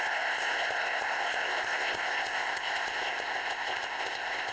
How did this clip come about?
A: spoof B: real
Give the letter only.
A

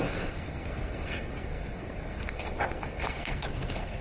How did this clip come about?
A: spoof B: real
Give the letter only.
A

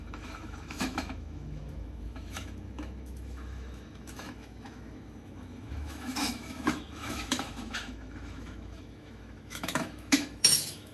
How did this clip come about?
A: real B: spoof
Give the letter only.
B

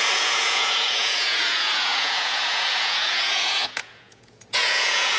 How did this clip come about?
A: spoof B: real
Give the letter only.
A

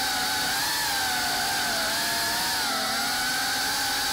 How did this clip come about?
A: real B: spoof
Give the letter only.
A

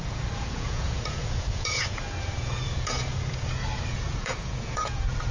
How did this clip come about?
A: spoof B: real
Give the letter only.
A